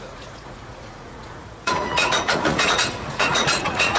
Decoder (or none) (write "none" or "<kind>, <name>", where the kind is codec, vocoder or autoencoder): vocoder, Vocos